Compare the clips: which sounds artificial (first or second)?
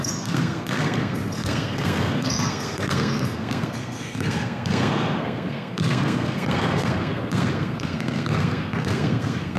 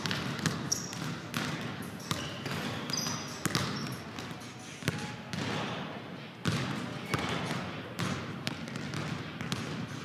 first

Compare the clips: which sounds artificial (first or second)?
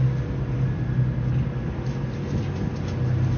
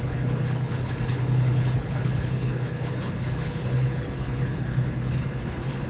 second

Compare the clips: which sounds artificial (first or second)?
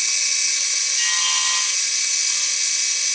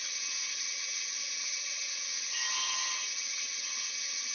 second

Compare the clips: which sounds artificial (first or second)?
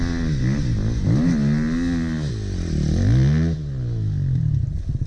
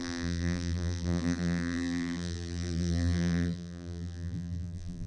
second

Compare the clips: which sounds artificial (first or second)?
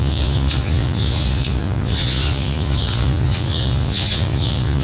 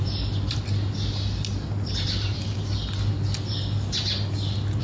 first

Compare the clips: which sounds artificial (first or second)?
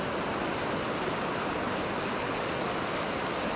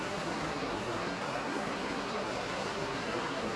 second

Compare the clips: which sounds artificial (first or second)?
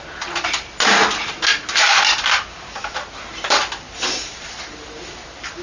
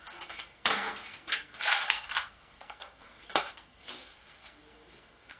second